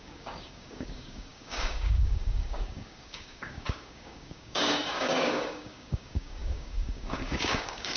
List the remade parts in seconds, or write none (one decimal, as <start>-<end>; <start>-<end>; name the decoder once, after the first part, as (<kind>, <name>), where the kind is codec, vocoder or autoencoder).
0.0-8.0 (codec, DAC)